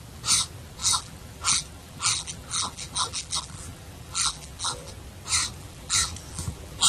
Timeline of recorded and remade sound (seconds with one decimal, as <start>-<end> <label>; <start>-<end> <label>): 0.0-0.8 recorded; 0.8-4.9 remade; 4.9-5.6 recorded; 5.6-6.9 remade